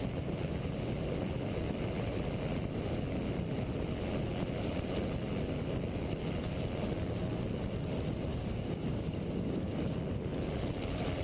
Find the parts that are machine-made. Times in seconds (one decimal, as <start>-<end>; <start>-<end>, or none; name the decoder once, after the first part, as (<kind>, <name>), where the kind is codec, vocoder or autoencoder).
8.3-9.9 (codec, DAC)